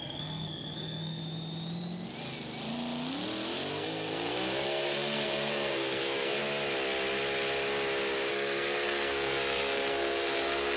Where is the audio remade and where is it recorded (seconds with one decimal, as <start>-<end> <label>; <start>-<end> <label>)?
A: 0.0-1.2 remade; 1.2-3.7 recorded; 3.7-6.4 remade; 6.4-8.3 recorded; 8.3-10.8 remade